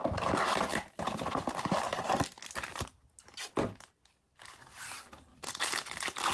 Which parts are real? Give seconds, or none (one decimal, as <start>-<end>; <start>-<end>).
0.0-6.3